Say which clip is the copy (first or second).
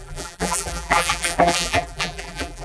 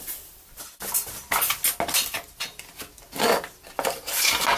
first